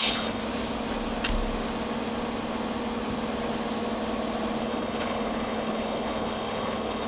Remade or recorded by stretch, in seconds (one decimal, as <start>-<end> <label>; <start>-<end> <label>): 0.0-0.4 remade; 0.4-4.6 recorded; 4.6-7.1 remade